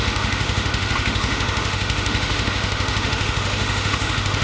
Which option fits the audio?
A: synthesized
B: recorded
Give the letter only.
A